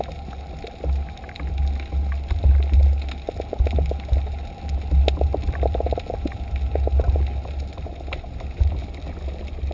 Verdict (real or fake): real